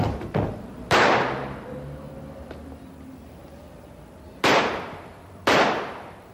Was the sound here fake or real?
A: real